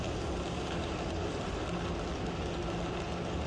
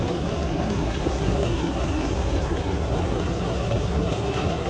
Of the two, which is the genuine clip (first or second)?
first